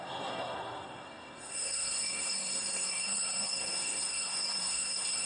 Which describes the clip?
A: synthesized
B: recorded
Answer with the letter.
A